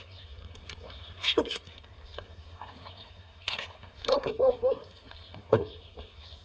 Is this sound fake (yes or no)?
yes